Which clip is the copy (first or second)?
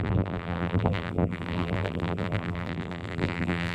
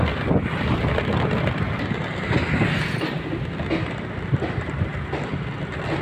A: first